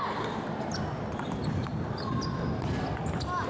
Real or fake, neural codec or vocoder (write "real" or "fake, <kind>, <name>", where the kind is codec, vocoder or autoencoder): real